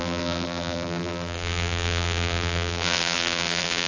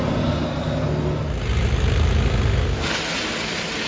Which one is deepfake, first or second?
first